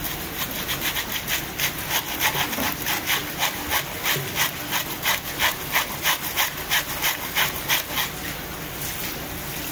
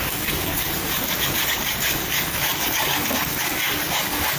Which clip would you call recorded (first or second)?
first